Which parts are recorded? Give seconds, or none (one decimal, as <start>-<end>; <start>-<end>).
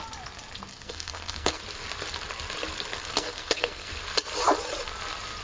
0.0-0.7; 1.6-3.0; 3.9-5.4